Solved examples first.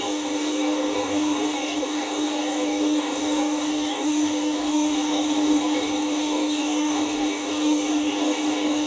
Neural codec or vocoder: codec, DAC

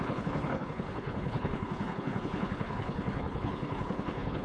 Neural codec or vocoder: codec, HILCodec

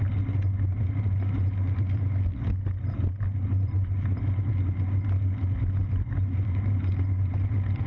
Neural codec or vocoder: none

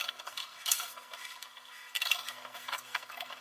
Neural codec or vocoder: codec, SNAC